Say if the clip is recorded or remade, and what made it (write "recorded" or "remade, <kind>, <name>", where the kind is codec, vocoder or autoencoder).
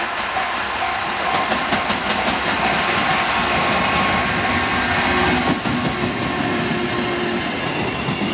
recorded